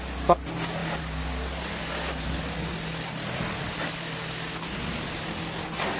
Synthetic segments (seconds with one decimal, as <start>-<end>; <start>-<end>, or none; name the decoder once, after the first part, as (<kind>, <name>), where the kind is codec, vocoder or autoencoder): none